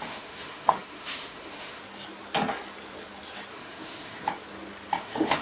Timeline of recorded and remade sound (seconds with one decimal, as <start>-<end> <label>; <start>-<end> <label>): 0.0-1.8 remade; 1.8-3.5 recorded; 3.5-4.2 remade; 4.2-5.0 recorded; 5.0-5.4 remade